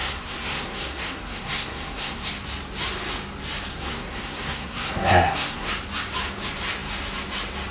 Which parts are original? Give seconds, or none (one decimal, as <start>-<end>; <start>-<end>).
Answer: 2.3-3.7; 5.7-7.7